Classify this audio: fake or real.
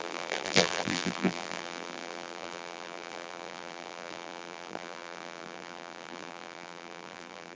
fake